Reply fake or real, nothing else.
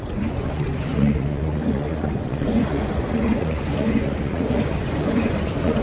fake